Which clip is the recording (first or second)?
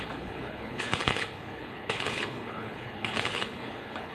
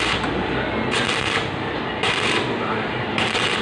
second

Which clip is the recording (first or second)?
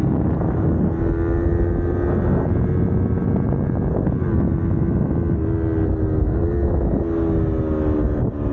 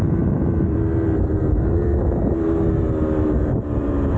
first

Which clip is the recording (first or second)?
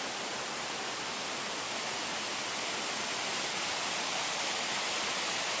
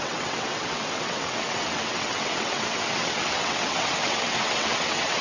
first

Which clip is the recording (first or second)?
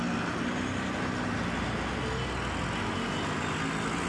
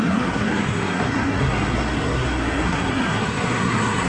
first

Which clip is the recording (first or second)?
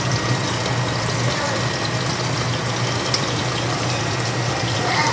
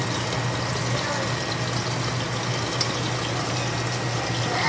second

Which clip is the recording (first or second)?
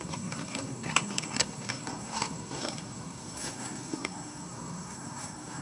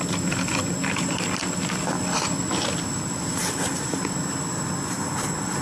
second